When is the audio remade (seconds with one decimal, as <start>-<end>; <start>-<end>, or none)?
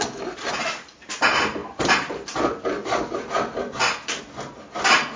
1.6-4.2